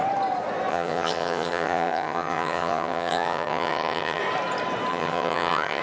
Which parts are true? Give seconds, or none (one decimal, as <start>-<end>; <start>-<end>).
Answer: 0.0-0.7; 4.2-4.9